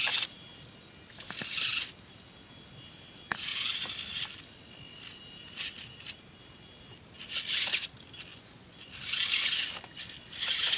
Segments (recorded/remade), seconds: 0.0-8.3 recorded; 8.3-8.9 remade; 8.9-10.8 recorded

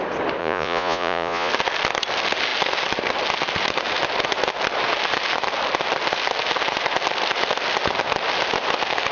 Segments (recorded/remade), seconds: 0.0-0.4 recorded; 0.4-1.5 remade; 1.5-9.1 recorded

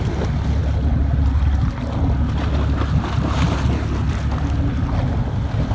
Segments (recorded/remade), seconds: 0.0-5.7 recorded

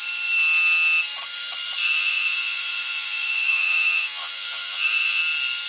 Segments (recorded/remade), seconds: 0.0-1.8 recorded; 1.8-5.2 remade; 5.2-5.7 recorded